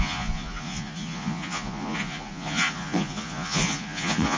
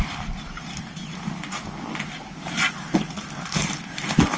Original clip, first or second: second